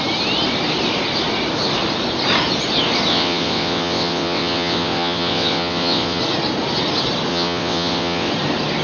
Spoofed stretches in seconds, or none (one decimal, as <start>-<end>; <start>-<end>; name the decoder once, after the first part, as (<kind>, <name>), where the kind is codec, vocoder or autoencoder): 3.1-6.2 (vocoder, WaveNeXt); 7.3-8.3

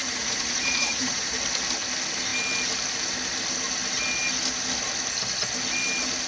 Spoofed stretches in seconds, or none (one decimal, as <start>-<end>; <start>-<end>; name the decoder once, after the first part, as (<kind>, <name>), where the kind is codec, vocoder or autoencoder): 0.0-1.3 (vocoder, Vocos)

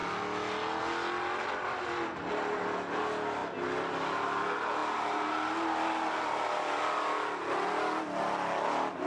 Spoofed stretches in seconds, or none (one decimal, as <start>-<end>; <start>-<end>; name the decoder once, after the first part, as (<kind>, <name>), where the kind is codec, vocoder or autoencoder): none

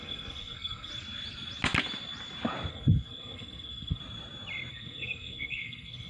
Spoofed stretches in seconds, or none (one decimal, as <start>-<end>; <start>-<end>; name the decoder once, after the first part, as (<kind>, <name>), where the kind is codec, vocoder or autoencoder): 0.0-0.9 (codec, SNAC); 2.7-4.0; 4.7-6.1

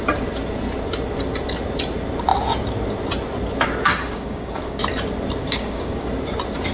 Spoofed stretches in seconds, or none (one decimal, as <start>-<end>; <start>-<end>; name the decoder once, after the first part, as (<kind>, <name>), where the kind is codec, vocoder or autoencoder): 3.9-4.8 (codec, DAC); 5.4-6.0

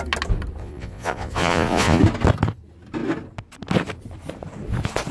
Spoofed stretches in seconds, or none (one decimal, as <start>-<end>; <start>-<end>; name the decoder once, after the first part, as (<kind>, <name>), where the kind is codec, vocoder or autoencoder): 0.6-2.0 (vocoder, Vocos)